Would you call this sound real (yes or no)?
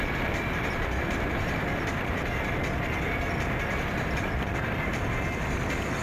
yes